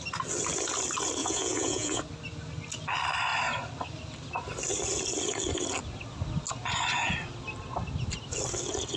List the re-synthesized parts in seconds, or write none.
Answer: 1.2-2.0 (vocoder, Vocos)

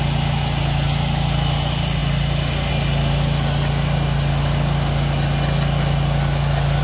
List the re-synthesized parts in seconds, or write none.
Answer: none

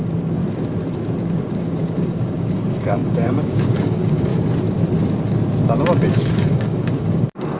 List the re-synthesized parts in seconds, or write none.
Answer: 0.0-0.4 (codec, DAC); 1.2-4.3; 6.1-7.6

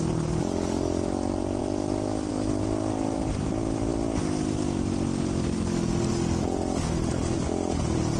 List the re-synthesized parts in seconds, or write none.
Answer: none

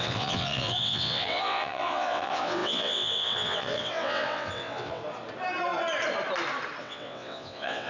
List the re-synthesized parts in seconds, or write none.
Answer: 0.0-5.0 (vocoder, WaveNeXt); 6.8-7.9

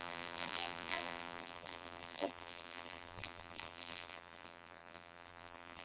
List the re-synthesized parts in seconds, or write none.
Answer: 0.0-5.8 (vocoder, BigVGAN v2)

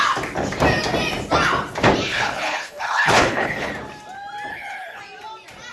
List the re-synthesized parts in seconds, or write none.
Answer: 2.1-3.7 (codec, HILCodec); 4.5-5.0